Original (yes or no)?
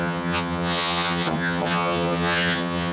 no